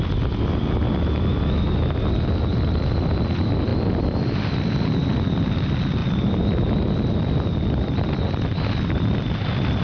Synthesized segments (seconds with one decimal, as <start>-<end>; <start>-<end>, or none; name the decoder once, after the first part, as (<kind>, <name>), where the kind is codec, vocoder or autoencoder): none